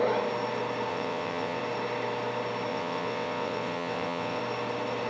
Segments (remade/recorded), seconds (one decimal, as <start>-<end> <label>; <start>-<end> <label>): 0.0-0.9 recorded; 0.9-1.6 remade; 1.6-2.7 recorded; 2.7-4.4 remade; 4.4-5.1 recorded